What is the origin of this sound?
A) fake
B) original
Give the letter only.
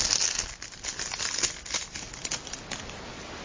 B